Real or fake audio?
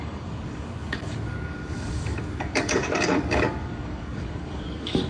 fake